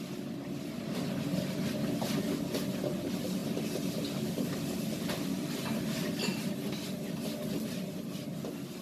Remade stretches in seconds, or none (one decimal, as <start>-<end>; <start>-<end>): none